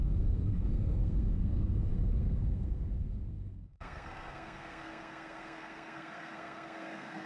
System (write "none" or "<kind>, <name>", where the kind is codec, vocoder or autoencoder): codec, SNAC